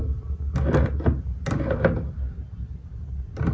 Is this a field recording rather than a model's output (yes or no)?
yes